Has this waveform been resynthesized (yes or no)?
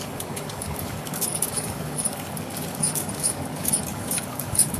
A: yes